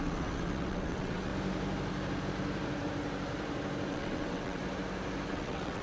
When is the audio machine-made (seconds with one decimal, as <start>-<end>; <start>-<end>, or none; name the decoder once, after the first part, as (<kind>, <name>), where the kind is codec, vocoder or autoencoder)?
0.0-1.3 (vocoder, WaveNeXt); 3.9-4.6; 5.3-5.8